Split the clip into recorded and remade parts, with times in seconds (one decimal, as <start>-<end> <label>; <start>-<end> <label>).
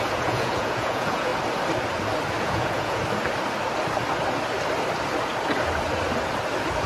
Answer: 0.0-1.3 remade; 1.3-2.4 recorded; 2.4-3.0 remade; 3.0-6.9 recorded